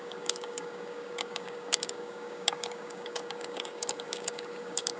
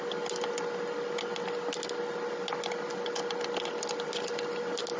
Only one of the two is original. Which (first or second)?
second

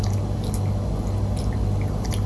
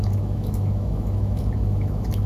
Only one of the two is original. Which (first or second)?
first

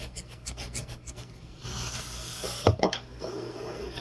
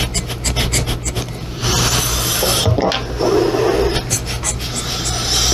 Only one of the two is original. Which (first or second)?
second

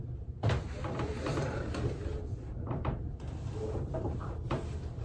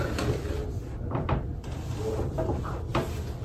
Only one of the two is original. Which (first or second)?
second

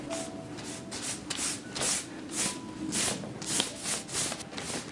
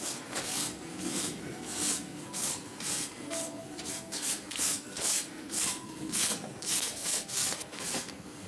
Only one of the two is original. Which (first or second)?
first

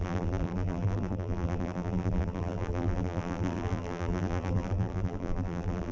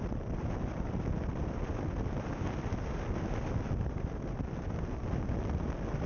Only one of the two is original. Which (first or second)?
second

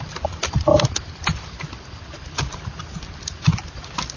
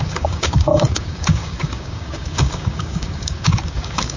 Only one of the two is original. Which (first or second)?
first